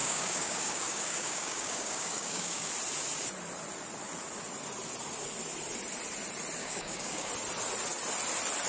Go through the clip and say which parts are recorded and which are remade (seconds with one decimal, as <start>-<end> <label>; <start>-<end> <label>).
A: 0.0-2.7 remade; 2.7-6.6 recorded; 6.6-7.3 remade; 7.3-8.7 recorded